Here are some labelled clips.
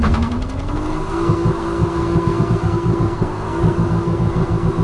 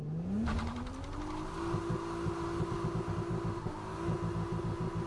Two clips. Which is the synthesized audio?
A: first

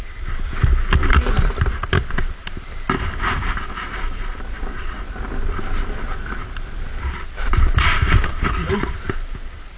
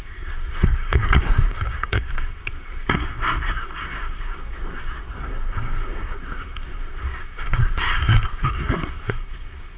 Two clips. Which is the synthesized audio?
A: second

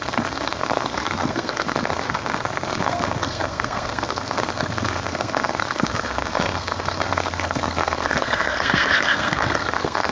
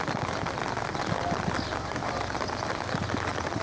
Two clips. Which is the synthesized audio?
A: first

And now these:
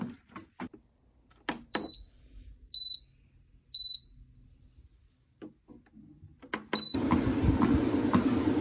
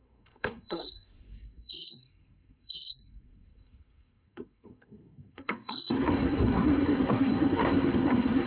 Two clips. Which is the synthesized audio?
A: second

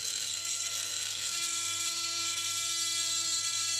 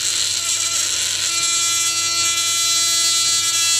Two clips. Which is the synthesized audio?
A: first